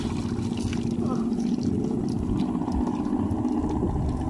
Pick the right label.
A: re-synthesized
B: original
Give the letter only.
B